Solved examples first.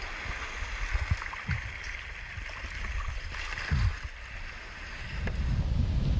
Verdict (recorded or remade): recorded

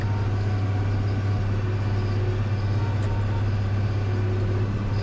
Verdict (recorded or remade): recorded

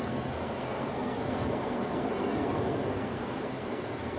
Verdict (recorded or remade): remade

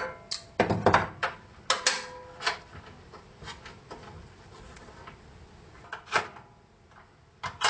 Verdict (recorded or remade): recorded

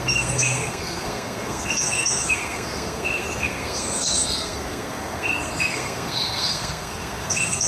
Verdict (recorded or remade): remade